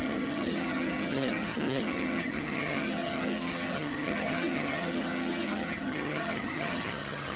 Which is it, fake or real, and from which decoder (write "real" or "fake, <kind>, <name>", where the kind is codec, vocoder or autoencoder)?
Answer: fake, vocoder, HiFi-GAN